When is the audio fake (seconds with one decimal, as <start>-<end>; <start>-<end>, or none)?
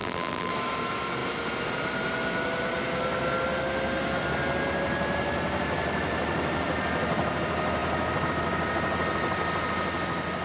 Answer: 0.0-0.5